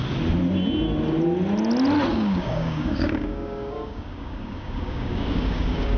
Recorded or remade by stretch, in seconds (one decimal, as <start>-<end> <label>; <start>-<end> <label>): 0.0-2.1 recorded; 2.1-6.0 remade